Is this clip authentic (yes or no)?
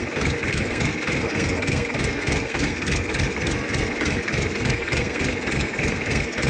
no